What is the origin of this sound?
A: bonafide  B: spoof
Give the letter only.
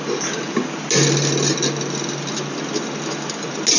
A